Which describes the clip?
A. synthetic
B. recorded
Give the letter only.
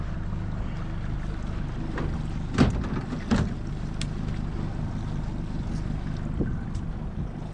B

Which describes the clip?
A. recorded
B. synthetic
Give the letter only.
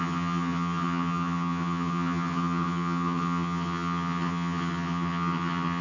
B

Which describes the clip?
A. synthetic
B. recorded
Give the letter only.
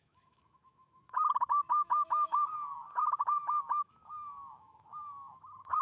A